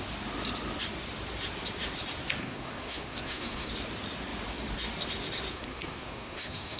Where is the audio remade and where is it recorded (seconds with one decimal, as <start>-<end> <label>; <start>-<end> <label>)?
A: 0.0-2.4 recorded; 2.4-3.7 remade; 3.7-5.5 recorded; 5.5-6.8 remade